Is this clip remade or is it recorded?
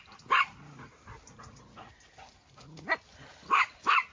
recorded